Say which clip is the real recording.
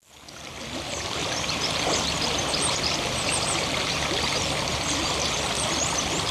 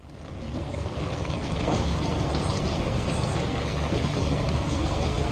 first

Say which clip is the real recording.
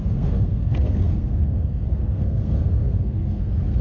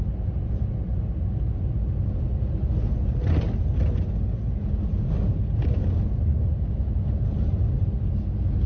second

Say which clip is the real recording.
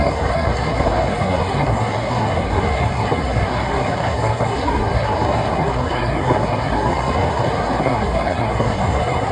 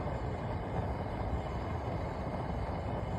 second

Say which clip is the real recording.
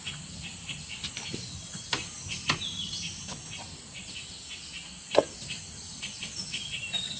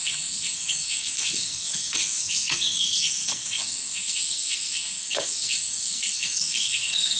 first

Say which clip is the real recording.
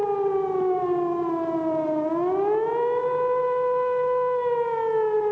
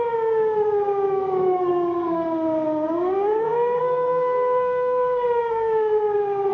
first